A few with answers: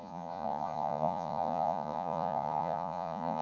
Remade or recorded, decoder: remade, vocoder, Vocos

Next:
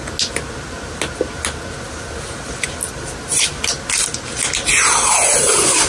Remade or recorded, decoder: recorded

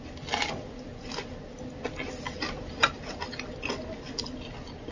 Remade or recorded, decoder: recorded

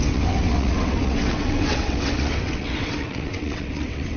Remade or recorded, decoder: remade, vocoder, WaveNeXt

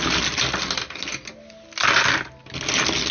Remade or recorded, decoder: recorded